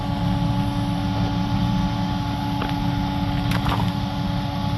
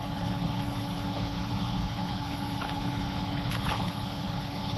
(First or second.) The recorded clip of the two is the first